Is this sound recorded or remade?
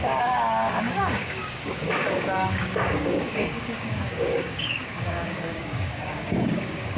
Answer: remade